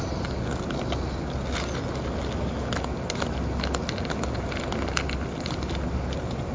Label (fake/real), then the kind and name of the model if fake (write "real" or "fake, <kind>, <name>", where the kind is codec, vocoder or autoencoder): real